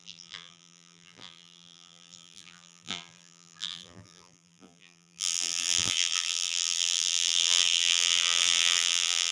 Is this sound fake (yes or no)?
yes